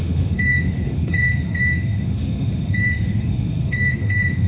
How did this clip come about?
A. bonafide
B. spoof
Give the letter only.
B